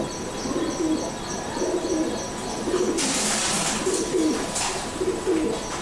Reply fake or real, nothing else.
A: real